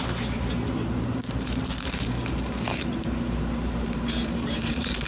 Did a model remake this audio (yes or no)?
yes